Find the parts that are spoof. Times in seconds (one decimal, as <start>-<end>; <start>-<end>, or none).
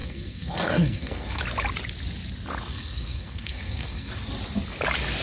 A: 0.0-1.4; 2.7-4.1